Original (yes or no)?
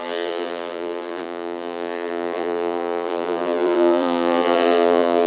no